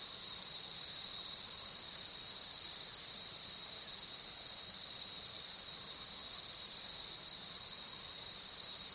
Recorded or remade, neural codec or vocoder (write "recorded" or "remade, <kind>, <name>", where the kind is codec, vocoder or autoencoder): remade, vocoder, BigVGAN v2